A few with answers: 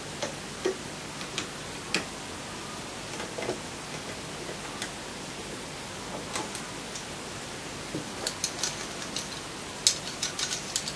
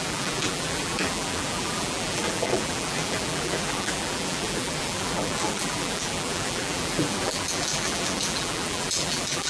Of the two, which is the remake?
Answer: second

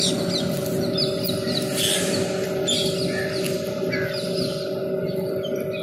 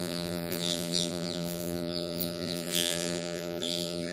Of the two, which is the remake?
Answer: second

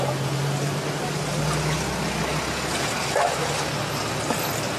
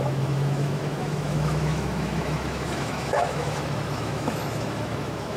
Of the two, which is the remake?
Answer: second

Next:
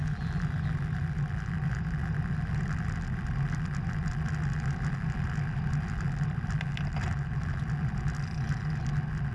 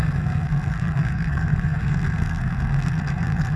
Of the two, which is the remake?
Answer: second